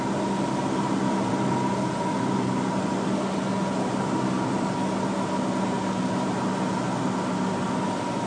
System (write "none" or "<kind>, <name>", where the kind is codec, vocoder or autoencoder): none